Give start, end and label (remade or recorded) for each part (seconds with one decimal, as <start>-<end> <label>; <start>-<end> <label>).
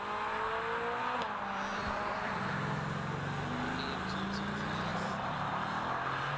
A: 0.0-1.7 recorded; 1.7-2.5 remade; 2.5-4.9 recorded; 4.9-5.5 remade; 5.5-6.4 recorded